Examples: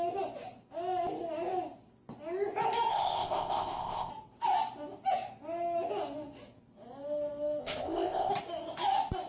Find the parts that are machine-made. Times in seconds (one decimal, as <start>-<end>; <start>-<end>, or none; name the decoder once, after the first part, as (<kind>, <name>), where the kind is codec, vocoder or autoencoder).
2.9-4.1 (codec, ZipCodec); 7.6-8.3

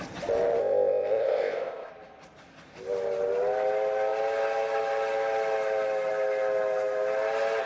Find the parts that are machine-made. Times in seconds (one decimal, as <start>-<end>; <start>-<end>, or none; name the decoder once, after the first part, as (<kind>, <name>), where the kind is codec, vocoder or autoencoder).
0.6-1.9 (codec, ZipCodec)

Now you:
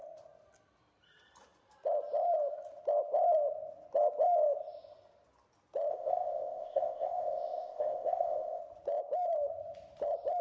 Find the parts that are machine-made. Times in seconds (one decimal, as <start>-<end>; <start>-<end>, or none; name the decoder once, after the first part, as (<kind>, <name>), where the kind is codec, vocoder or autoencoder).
5.9-8.6 (codec, ZipCodec)